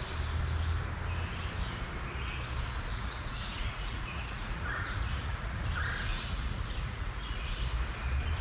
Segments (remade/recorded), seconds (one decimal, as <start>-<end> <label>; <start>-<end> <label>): 0.0-2.9 recorded; 2.9-5.6 remade; 5.6-6.1 recorded; 6.1-7.6 remade; 7.6-8.4 recorded